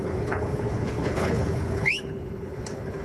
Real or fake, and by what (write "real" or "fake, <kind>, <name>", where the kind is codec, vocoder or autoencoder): fake, codec, HILCodec